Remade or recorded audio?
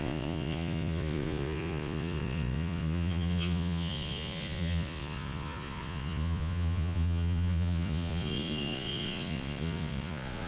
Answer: remade